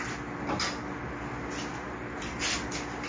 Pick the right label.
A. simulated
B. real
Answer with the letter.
B